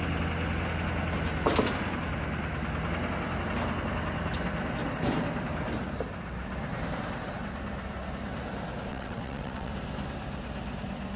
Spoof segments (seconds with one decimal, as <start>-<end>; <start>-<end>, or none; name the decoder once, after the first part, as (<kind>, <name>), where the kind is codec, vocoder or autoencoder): 8.9-9.7 (vocoder, WaveNeXt)